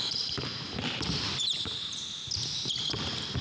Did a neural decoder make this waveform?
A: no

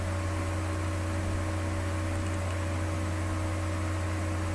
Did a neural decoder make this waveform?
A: no